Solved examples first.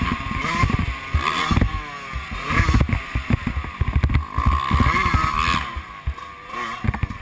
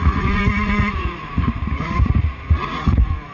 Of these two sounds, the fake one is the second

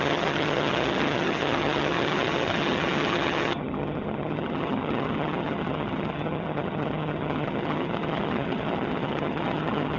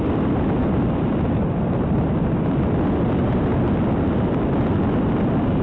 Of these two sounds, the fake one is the first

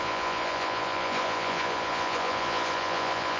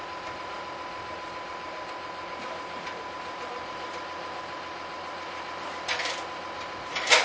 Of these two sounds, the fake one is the first